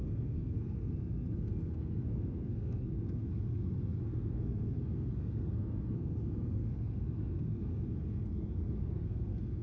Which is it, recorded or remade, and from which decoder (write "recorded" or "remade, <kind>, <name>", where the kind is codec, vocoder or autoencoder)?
remade, codec, SNAC